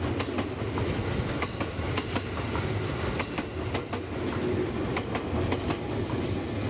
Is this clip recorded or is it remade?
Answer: recorded